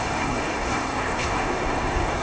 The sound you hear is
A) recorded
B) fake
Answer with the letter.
B